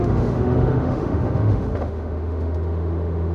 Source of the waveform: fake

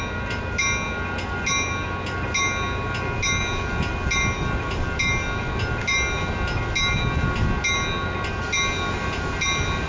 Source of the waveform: real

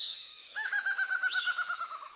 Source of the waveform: fake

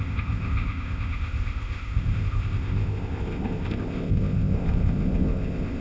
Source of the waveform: fake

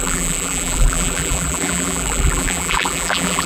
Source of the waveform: fake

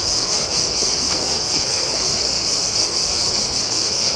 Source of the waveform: fake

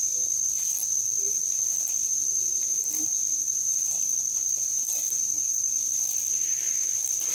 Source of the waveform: fake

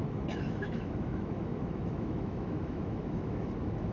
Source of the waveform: fake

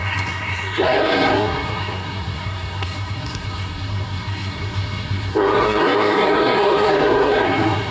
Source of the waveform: fake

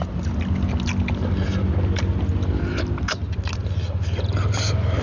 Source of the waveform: real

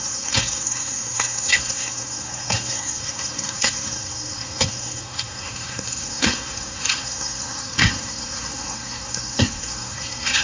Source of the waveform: fake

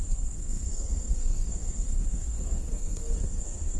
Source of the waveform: fake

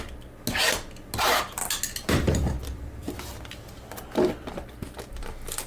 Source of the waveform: real